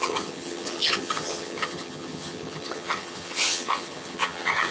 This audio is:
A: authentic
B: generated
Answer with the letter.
B